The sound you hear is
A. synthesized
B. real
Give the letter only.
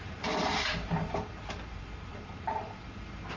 A